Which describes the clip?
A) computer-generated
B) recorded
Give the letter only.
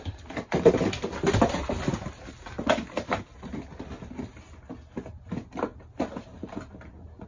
B